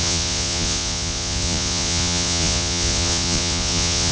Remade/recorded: remade